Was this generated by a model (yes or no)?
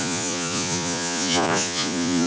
yes